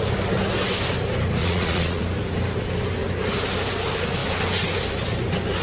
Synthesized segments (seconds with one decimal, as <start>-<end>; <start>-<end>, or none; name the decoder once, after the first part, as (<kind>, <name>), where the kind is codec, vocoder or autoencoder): 1.4-2.0 (vocoder, Vocos)